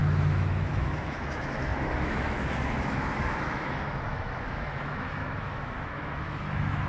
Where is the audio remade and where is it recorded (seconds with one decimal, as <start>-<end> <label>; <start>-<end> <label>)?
0.0-6.9 remade